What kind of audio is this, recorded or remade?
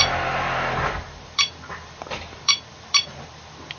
remade